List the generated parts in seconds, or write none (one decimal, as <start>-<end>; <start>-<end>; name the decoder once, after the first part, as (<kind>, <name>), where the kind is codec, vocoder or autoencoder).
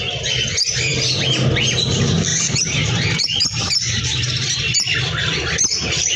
2.3-4.0 (vocoder, BigVGAN v2)